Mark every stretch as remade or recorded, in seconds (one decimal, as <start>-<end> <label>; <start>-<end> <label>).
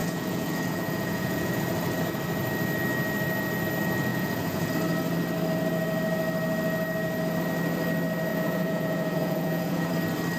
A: 0.0-1.6 remade; 1.6-4.1 recorded; 4.1-4.7 remade; 4.7-8.3 recorded; 8.3-9.9 remade; 9.9-10.4 recorded